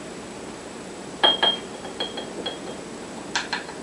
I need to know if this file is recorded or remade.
recorded